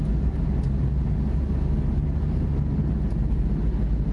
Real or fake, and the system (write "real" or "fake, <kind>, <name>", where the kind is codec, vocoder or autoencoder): real